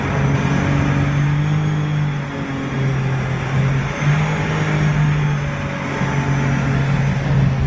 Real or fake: real